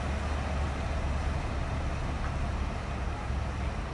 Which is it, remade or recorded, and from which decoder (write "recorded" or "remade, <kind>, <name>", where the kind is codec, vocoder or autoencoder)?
recorded